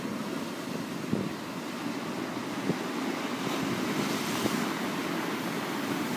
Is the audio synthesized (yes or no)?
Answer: no